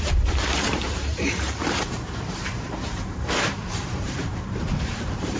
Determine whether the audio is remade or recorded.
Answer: remade